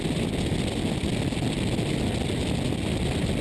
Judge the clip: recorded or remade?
recorded